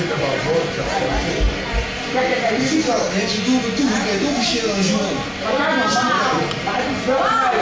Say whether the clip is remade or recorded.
recorded